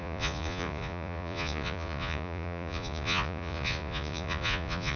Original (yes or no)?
no